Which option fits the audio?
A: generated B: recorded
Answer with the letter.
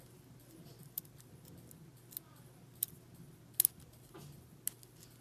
B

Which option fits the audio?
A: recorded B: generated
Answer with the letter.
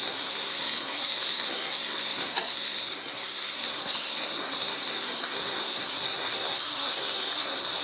B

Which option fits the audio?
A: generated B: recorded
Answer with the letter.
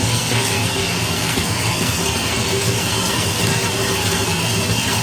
A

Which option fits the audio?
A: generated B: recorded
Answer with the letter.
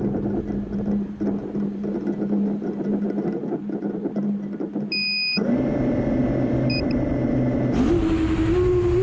B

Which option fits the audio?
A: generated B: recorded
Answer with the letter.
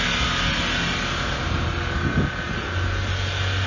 B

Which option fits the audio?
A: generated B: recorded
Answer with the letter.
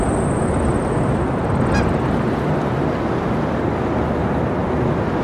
B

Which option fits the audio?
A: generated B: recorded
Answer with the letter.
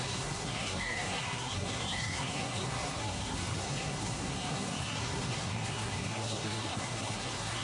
A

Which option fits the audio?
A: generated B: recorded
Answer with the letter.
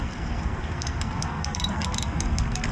A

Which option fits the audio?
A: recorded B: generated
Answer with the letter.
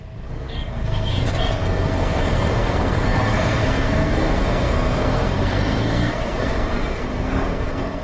B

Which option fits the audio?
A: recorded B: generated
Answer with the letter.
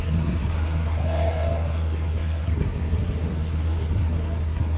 B